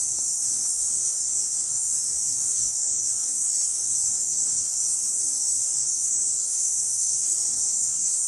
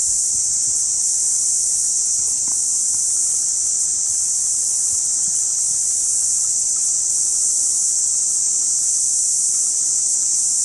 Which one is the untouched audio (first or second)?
second